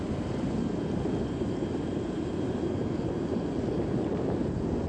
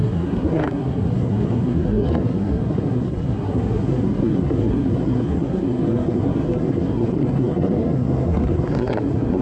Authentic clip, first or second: first